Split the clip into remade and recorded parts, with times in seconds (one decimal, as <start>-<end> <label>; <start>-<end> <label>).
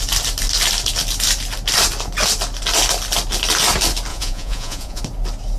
0.0-4.1 recorded; 4.1-5.0 remade; 5.0-5.6 recorded